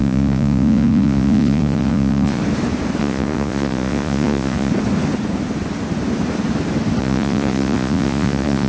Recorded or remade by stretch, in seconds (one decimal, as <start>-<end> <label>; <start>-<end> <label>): 0.0-2.4 remade; 2.4-3.0 recorded; 3.0-4.7 remade; 4.7-7.0 recorded; 7.0-8.7 remade